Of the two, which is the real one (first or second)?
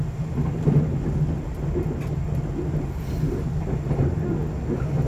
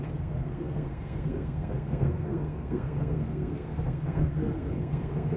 first